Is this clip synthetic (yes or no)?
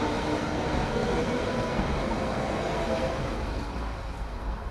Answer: yes